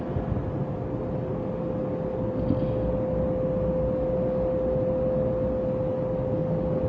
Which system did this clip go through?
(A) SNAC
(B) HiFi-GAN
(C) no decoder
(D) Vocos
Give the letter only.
C